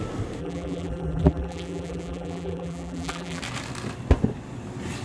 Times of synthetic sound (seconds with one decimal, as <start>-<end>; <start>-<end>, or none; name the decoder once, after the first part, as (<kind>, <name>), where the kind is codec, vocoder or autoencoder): 0.4-3.4 (vocoder, BigVGAN v2)